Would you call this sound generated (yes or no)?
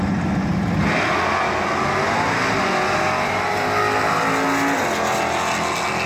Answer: no